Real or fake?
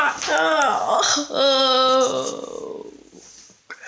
real